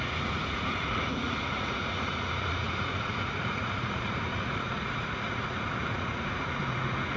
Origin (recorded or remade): remade